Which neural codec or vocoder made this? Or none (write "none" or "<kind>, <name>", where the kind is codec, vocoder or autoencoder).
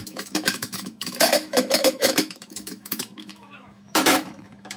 autoencoder, DAC-VAE